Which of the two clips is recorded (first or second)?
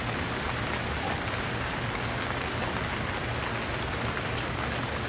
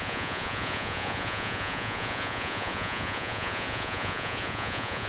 first